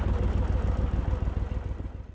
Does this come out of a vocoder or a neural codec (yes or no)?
no